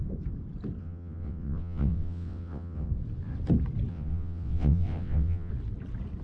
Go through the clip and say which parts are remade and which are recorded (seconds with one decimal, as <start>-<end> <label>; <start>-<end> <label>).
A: 0.0-0.8 recorded; 0.8-2.9 remade; 2.9-3.9 recorded; 3.9-5.5 remade; 5.5-6.2 recorded